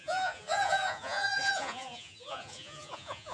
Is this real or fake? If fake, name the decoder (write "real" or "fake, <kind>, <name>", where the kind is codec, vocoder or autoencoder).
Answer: fake, vocoder, Vocos